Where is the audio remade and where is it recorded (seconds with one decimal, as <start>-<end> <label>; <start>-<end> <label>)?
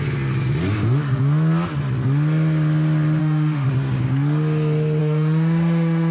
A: 0.0-3.2 recorded; 3.2-3.7 remade; 3.7-5.0 recorded; 5.0-6.1 remade